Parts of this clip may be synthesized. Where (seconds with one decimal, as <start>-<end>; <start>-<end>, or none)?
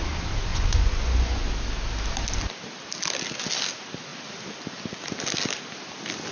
0.5-1.5